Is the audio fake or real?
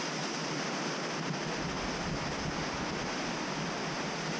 real